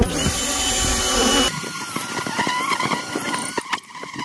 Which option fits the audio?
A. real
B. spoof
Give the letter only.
A